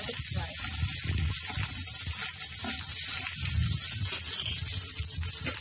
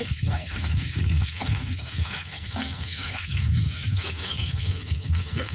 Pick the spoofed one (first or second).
second